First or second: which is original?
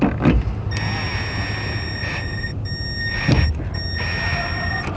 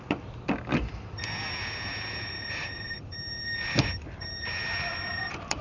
first